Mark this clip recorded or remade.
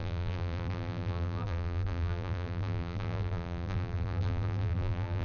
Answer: remade